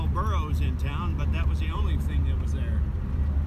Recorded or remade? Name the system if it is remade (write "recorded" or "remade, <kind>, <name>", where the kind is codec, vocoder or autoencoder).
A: recorded